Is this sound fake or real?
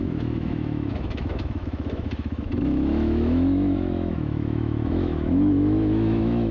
fake